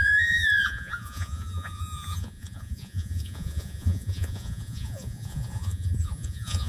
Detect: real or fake fake